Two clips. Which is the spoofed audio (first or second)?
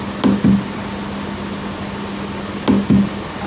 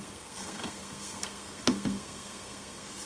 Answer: second